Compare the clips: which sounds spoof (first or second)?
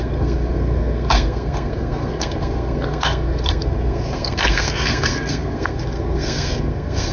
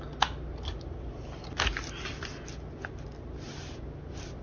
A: first